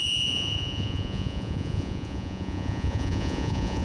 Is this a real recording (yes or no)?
no